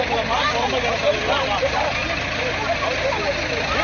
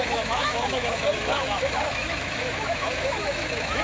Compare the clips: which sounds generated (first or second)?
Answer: second